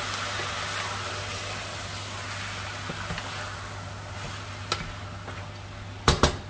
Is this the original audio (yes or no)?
yes